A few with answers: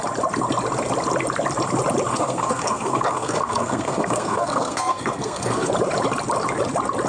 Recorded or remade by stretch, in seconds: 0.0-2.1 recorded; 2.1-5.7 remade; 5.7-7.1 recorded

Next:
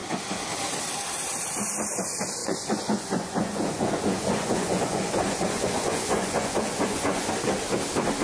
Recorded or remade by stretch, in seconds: 0.0-2.4 recorded; 2.4-7.3 remade; 7.3-8.2 recorded